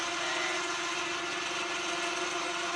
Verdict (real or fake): real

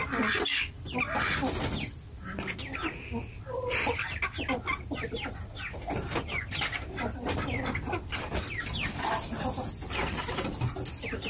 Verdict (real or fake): real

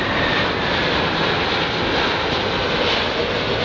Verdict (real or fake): real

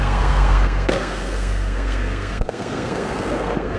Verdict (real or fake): fake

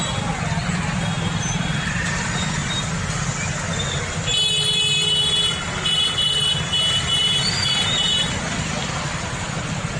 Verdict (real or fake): real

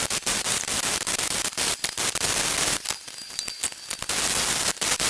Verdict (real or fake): real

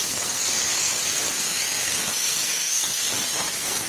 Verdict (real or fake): fake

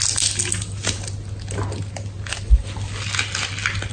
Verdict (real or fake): real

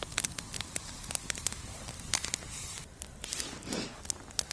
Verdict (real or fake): real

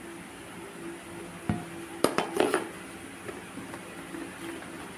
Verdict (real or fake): real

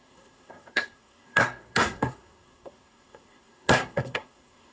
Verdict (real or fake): fake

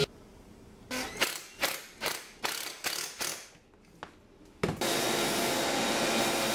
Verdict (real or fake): real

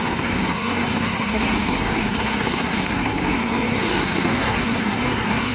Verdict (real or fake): fake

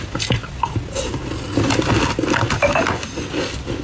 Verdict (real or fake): real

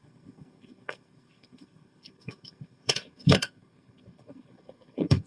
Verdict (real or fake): fake